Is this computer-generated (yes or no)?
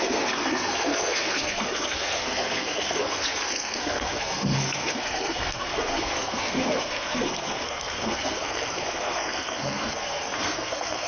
yes